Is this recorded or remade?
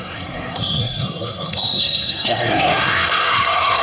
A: remade